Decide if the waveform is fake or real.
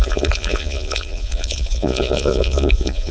fake